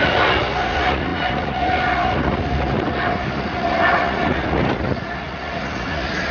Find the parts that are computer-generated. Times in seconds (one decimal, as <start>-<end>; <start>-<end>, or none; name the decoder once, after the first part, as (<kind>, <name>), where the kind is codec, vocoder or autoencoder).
0.0-6.3 (vocoder, Vocos)